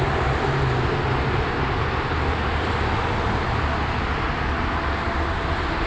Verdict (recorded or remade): recorded